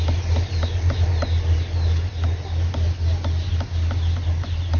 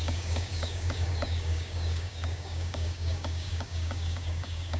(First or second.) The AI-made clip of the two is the second